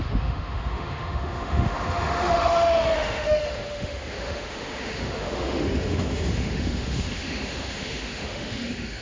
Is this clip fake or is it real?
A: fake